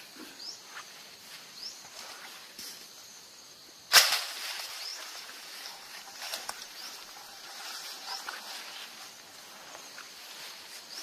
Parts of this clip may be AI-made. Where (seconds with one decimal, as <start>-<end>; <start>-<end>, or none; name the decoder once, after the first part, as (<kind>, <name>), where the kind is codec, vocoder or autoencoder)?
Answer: 4.9-8.3 (vocoder, BigVGAN v2)